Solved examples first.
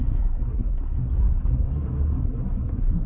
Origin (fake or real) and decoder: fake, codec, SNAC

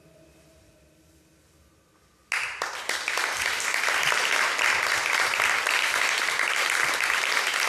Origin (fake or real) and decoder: real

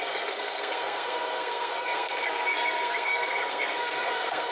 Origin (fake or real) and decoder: fake, codec, SNAC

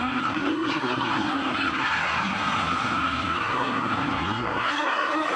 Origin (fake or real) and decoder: fake, codec, SNAC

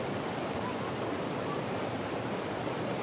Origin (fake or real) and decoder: real